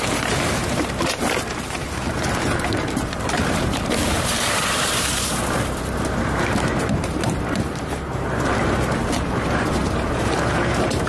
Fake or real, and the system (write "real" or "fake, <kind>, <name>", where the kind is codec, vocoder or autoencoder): fake, vocoder, BigVGAN v2